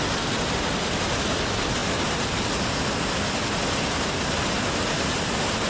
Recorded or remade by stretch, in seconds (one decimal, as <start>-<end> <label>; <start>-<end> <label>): 0.0-5.7 recorded